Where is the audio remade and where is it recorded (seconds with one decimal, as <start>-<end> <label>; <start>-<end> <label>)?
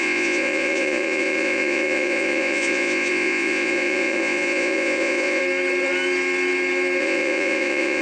0.0-5.4 remade; 5.4-7.0 recorded; 7.0-8.0 remade